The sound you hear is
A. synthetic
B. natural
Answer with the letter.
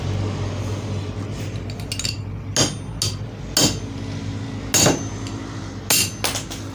B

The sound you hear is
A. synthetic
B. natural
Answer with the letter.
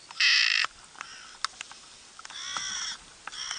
B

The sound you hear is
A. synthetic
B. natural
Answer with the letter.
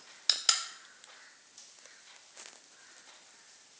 B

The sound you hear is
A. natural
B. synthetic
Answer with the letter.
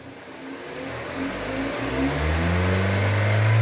A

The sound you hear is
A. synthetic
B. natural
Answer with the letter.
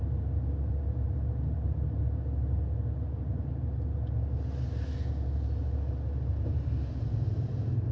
B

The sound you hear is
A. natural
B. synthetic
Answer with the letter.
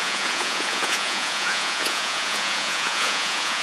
B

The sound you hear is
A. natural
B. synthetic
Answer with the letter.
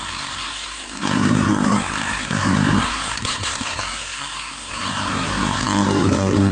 B